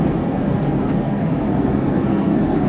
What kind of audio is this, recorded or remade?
remade